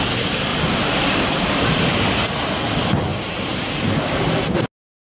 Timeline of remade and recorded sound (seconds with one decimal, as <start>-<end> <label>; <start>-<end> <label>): 0.0-0.5 recorded; 0.5-2.3 remade; 2.3-3.1 recorded; 3.1-4.0 remade; 4.0-5.1 recorded